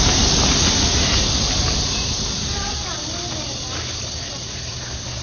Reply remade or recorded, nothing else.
recorded